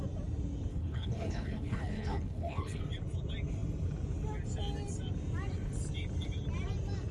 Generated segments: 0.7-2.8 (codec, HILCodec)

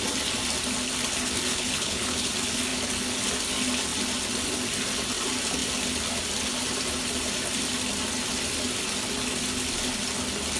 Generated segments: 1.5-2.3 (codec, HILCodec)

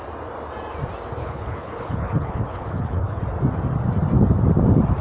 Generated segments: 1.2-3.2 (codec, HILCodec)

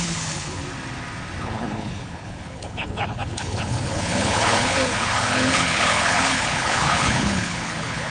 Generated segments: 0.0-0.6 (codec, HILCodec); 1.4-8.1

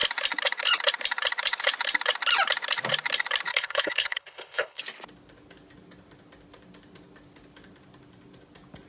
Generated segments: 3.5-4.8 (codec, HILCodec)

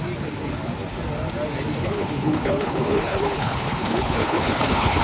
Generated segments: 1.8-5.0 (codec, HILCodec)